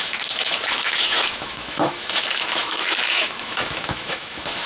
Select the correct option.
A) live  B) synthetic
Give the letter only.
B